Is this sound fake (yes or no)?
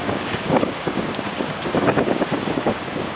yes